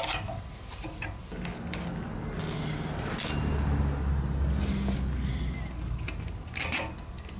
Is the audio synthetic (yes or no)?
no